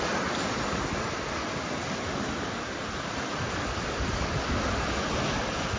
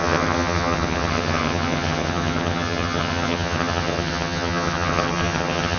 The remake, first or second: second